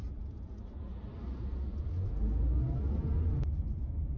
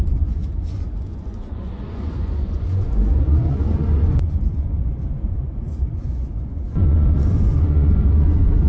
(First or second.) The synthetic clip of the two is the second